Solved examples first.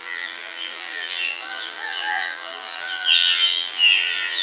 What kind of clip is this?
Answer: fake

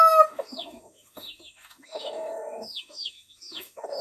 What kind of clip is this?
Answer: fake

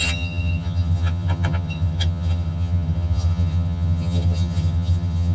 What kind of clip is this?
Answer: fake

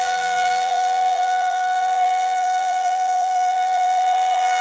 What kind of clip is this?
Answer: fake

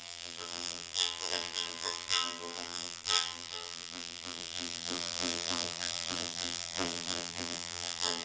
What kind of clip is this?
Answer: fake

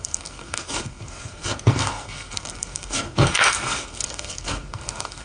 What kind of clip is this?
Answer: fake